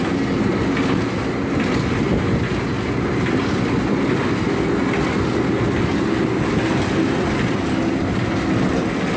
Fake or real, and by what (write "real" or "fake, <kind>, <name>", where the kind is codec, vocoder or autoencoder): real